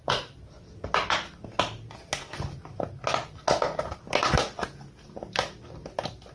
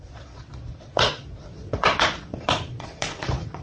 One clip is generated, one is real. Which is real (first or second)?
first